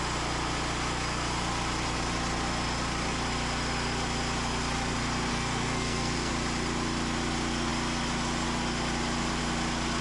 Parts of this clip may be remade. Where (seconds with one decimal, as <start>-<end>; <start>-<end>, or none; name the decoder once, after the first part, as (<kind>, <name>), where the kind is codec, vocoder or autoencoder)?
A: 5.3-6.3 (codec, SNAC)